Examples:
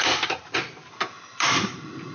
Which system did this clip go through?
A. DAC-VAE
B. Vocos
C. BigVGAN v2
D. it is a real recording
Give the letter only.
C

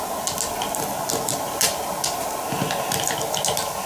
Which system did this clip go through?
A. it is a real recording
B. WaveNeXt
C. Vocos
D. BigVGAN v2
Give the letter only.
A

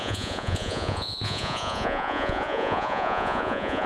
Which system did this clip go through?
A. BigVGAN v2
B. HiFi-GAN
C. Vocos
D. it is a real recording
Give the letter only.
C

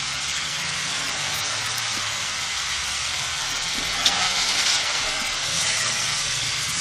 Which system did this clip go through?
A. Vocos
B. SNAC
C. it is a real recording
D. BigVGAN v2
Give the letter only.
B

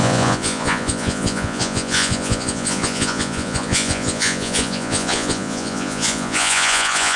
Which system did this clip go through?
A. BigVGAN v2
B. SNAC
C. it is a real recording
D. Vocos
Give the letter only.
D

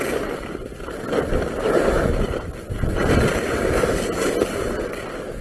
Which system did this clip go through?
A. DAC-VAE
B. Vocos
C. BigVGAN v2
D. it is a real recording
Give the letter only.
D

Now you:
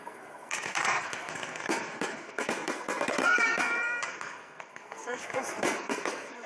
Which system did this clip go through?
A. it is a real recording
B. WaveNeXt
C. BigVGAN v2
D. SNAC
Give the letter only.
D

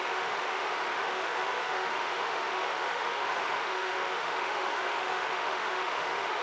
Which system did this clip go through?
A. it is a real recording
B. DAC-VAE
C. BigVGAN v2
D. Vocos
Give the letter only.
B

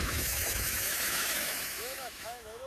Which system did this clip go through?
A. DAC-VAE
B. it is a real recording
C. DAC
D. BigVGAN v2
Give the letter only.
A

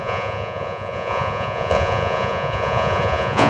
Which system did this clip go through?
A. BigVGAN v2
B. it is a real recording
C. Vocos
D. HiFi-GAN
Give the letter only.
C